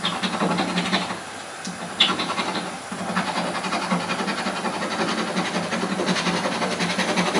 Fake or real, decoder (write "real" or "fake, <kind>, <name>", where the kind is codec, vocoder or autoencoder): real